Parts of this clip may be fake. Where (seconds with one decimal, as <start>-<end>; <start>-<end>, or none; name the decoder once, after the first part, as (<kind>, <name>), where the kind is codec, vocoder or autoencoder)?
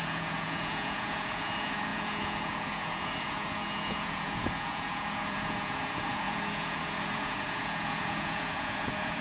0.0-9.2 (vocoder, Vocos)